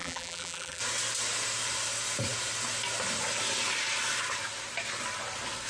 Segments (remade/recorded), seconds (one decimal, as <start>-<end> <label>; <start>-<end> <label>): 0.0-0.8 remade; 0.8-5.7 recorded